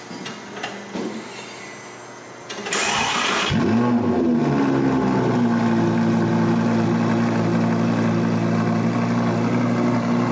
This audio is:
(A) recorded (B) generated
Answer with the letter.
A